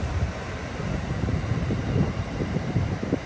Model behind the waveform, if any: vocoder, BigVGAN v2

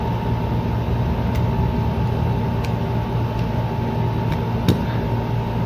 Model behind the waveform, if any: none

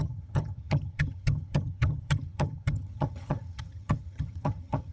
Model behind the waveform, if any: vocoder, HiFi-GAN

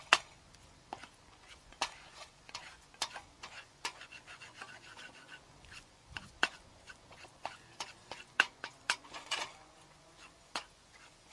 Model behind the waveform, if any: vocoder, Vocos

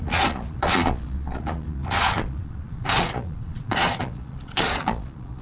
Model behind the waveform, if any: vocoder, Vocos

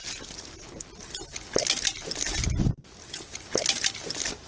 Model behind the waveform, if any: none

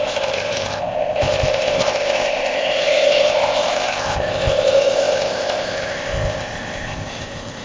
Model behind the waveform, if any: codec, ZipCodec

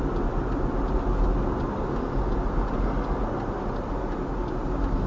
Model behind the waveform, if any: none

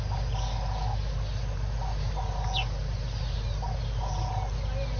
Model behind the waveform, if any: none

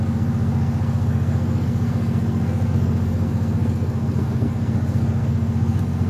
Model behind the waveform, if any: codec, SNAC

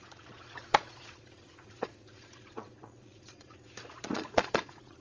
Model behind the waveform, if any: vocoder, Vocos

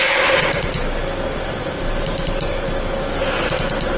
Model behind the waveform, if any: none